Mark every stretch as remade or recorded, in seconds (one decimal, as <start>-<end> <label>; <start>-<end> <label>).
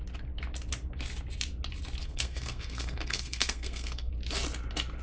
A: 0.0-2.0 recorded; 2.0-4.1 remade; 4.1-5.0 recorded